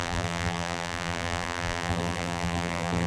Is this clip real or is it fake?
fake